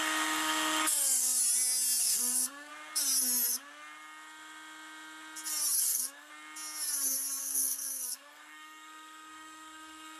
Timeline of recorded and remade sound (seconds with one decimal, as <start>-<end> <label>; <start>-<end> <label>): 0.0-1.4 remade; 1.4-2.0 recorded; 2.0-2.7 remade; 2.7-5.8 recorded; 5.8-6.3 remade; 6.3-7.4 recorded; 7.4-10.2 remade